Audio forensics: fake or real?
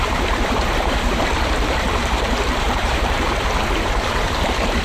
fake